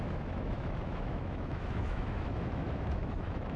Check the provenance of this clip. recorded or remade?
remade